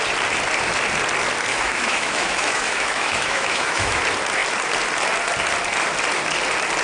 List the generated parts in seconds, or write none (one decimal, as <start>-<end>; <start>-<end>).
1.5-4.0